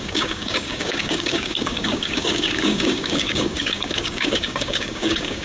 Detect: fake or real fake